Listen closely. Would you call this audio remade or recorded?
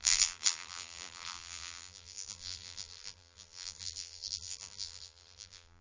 remade